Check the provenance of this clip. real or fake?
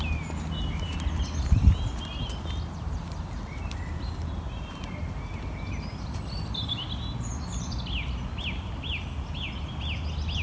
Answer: real